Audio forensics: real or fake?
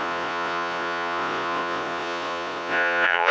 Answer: fake